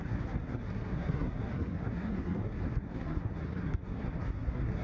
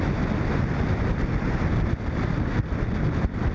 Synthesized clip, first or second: first